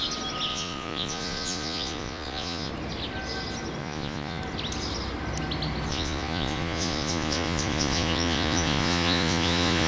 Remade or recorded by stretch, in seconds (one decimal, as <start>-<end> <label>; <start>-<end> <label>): 0.0-0.5 recorded; 0.5-2.7 remade; 2.7-3.8 recorded; 3.8-4.4 remade; 4.4-5.9 recorded; 5.9-9.9 remade